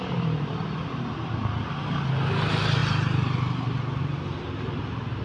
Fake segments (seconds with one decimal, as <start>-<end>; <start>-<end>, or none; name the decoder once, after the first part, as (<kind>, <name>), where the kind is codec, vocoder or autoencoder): none